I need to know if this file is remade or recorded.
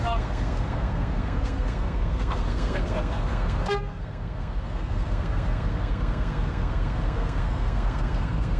remade